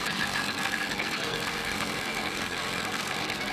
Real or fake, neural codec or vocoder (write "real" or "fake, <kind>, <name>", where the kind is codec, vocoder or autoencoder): fake, codec, SNAC